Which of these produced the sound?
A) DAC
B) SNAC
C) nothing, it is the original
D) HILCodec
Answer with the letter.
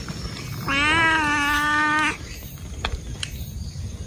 C